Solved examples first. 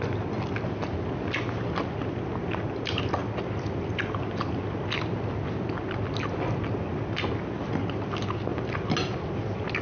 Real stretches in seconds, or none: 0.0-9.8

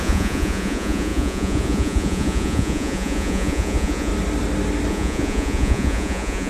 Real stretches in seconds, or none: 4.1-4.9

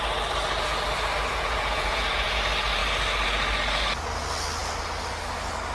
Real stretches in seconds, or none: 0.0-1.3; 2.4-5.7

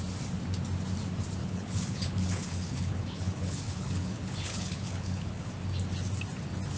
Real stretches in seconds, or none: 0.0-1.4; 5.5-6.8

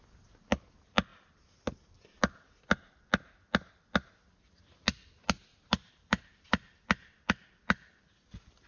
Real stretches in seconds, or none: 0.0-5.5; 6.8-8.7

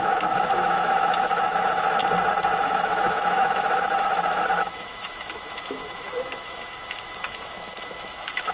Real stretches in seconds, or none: 2.0-2.6

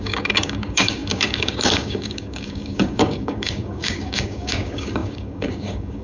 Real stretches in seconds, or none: none

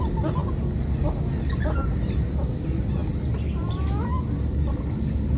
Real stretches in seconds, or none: 0.0-5.4